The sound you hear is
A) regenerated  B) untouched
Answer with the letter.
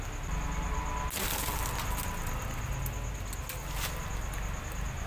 B